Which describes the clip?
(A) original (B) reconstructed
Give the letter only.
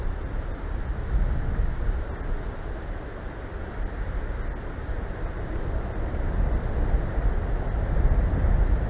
A